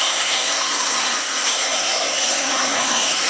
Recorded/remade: remade